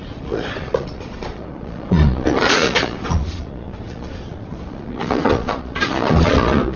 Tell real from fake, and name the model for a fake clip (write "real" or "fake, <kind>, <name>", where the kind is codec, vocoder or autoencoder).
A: fake, vocoder, Vocos